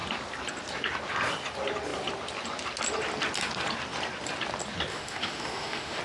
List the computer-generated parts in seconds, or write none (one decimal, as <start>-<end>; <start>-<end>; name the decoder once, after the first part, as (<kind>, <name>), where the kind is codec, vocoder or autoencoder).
4.9-6.0 (autoencoder, DAC-VAE)